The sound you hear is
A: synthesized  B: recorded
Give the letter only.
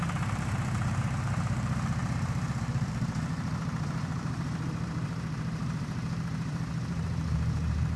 A